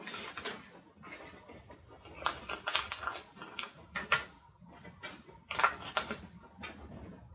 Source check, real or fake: real